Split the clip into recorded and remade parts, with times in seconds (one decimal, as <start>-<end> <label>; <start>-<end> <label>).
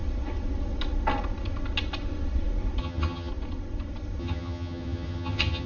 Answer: 0.0-2.8 recorded; 2.8-3.3 remade; 3.3-4.2 recorded; 4.2-5.7 remade